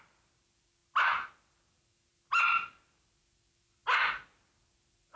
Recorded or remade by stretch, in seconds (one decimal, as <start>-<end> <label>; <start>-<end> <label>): 0.0-0.8 remade; 0.8-1.4 recorded; 1.4-2.1 remade; 2.1-2.6 recorded; 2.6-3.8 remade; 3.8-4.6 recorded; 4.6-5.2 remade